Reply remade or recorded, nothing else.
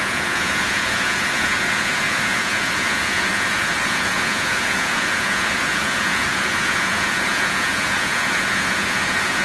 remade